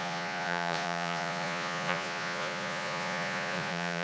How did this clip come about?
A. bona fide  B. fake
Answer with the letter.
B